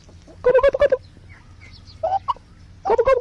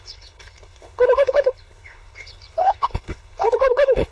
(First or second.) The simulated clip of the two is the second